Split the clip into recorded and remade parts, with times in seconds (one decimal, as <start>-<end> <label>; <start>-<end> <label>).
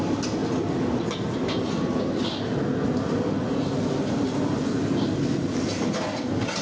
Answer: 0.0-6.6 recorded